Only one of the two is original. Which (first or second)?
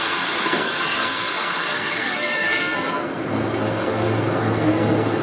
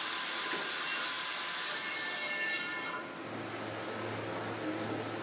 second